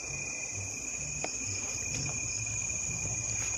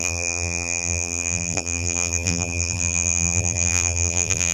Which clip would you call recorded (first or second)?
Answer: first